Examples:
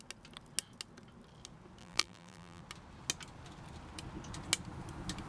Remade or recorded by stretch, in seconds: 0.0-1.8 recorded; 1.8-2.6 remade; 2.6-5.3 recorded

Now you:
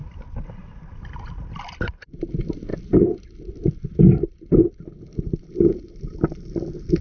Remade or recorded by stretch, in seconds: 0.0-2.7 recorded; 2.7-4.0 remade; 4.0-7.0 recorded

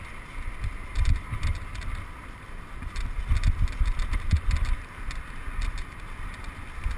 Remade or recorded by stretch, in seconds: 0.0-0.9 recorded; 0.9-5.1 remade; 5.1-7.0 recorded

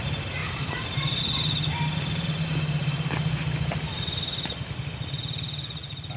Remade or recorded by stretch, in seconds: 0.0-0.4 recorded; 0.4-1.2 remade; 1.2-2.8 recorded; 2.8-3.4 remade; 3.4-6.2 recorded

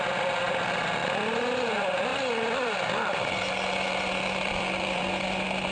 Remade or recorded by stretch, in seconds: 0.0-1.0 recorded; 1.0-1.7 remade; 1.7-2.1 recorded; 2.1-5.7 remade